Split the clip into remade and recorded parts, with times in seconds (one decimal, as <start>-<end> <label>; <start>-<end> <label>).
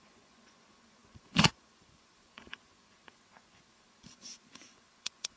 0.0-5.4 remade